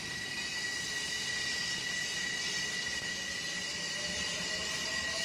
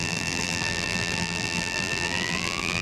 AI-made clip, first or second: second